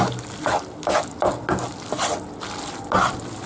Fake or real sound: real